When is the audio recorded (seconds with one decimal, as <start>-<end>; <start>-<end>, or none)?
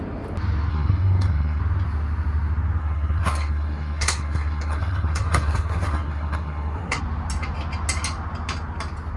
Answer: 0.0-0.7; 1.6-2.8; 7.0-9.2